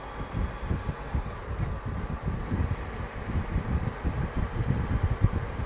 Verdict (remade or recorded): recorded